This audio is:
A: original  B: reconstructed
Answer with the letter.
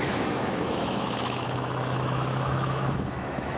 B